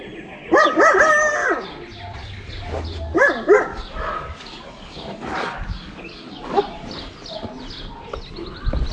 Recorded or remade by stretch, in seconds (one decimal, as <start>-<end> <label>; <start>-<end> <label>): 0.0-2.2 recorded; 2.2-2.7 remade; 2.7-3.7 recorded; 3.7-6.6 remade; 6.6-8.9 recorded